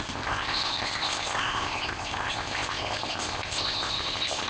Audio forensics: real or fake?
fake